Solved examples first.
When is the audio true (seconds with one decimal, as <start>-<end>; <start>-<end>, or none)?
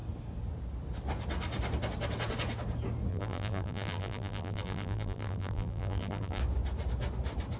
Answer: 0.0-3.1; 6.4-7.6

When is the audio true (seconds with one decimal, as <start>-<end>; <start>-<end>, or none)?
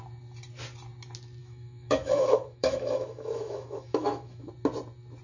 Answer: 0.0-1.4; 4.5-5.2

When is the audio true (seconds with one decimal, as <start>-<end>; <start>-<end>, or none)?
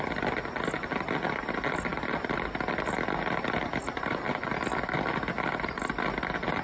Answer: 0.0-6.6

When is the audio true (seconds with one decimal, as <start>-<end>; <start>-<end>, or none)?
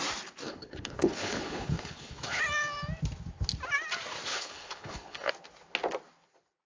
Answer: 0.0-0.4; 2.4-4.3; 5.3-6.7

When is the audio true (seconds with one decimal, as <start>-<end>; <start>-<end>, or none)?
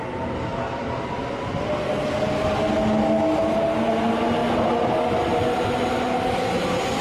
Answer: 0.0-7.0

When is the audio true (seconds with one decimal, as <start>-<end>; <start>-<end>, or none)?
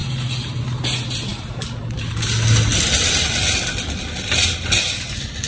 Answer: 0.0-5.5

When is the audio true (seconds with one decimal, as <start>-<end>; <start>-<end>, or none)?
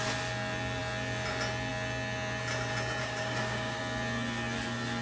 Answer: 0.0-3.0; 3.8-5.0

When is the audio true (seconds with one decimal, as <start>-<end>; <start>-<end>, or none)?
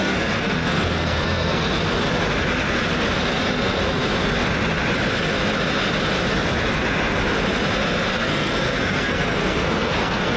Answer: 1.8-8.1